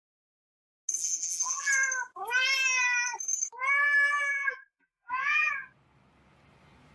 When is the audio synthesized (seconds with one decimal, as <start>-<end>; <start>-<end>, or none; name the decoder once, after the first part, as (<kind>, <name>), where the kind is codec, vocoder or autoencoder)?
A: 1.0-1.7 (vocoder, BigVGAN v2); 4.3-5.5